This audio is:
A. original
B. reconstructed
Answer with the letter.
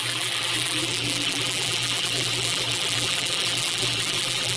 B